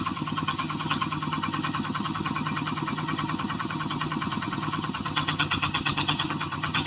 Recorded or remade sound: remade